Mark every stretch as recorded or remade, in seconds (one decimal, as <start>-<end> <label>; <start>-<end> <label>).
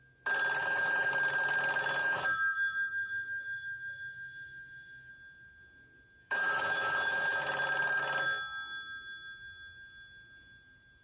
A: 0.0-0.6 recorded; 0.6-1.1 remade; 1.1-2.0 recorded; 2.0-5.1 remade; 5.1-6.2 recorded; 6.2-7.4 remade; 7.4-11.0 recorded